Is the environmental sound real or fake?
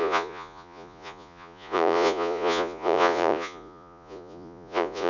fake